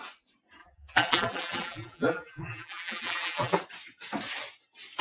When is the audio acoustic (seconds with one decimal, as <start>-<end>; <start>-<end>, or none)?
0.0-0.6; 3.6-5.0